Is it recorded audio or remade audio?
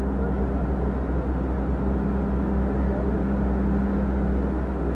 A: recorded